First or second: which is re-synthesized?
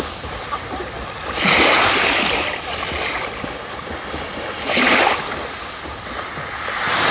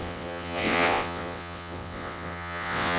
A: second